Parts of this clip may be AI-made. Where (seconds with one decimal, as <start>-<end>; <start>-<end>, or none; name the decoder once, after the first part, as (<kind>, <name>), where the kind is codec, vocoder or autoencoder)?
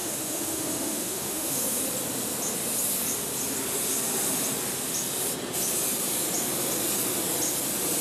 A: 0.0-1.8 (autoencoder, DAC-VAE)